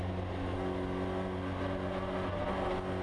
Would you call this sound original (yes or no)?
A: yes